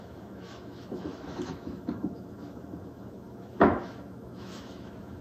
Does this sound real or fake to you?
fake